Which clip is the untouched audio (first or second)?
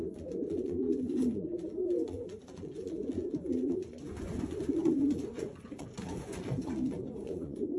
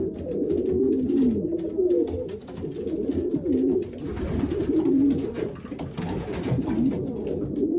second